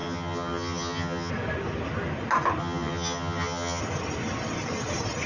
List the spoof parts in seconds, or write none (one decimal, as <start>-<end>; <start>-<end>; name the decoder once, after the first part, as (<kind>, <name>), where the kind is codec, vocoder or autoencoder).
0.0-1.3 (vocoder, HiFi-GAN); 2.6-3.8

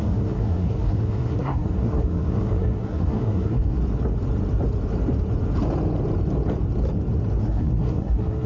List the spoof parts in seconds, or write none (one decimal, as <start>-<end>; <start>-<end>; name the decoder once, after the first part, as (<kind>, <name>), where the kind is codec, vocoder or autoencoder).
0.0-3.8 (codec, SNAC); 7.4-8.5

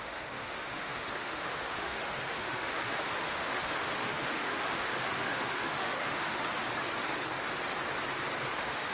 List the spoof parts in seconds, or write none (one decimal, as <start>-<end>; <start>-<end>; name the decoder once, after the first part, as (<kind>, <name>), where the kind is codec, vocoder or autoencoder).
0.0-6.6 (autoencoder, DAC-VAE); 8.5-8.9